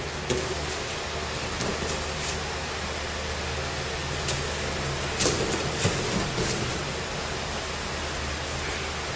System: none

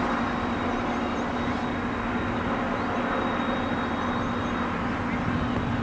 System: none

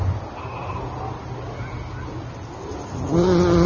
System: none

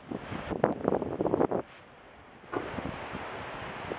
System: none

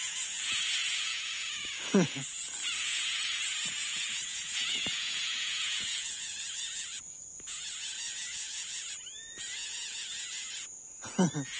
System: vocoder, Vocos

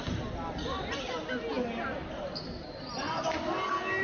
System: none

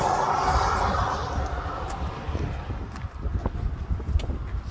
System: none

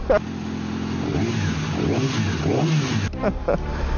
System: none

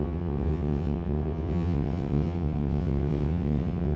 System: vocoder, WaveNeXt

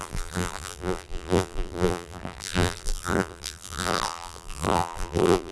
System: vocoder, BigVGAN v2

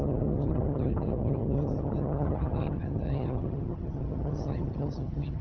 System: vocoder, HiFi-GAN